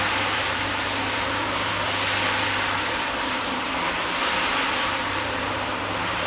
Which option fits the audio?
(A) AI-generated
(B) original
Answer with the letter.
A